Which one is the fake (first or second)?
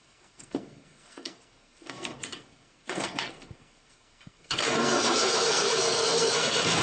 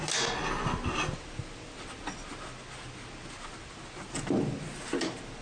first